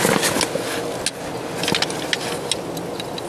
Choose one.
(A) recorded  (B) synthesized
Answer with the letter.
A